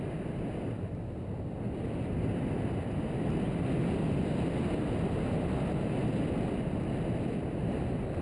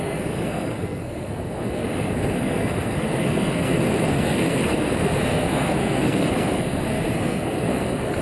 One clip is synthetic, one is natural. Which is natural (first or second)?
first